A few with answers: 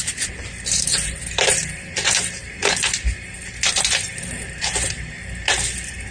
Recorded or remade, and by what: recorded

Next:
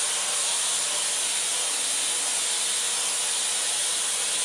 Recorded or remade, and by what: recorded